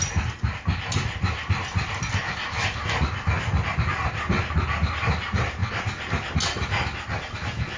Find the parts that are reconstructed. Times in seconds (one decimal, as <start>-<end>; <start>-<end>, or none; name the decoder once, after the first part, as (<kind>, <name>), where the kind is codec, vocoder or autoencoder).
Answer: none